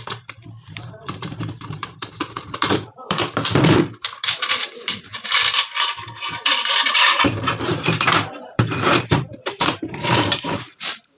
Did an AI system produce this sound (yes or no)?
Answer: yes